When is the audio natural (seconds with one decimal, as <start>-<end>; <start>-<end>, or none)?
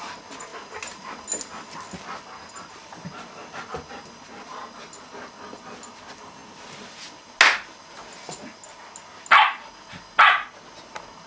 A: 0.0-11.3